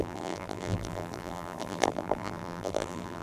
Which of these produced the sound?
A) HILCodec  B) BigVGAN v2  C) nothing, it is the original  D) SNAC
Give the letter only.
B